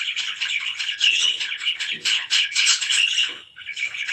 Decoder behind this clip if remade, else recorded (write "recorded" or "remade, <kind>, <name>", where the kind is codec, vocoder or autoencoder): remade, codec, HILCodec